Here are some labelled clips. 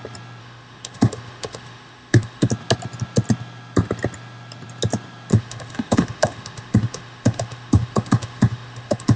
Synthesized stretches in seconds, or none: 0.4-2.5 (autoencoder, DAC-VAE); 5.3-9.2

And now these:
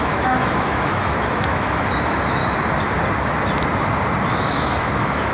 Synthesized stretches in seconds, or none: 0.0-2.4 (autoencoder, DAC-VAE); 4.4-5.3

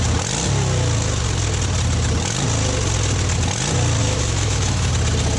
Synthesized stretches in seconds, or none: 4.0-4.9 (autoencoder, DAC-VAE)

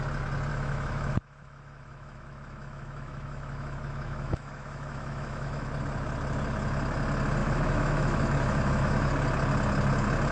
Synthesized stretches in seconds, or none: 0.5-5.7 (autoencoder, DAC-VAE); 7.4-9.1